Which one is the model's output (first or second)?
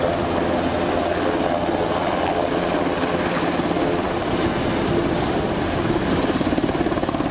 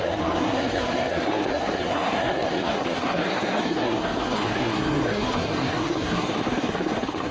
second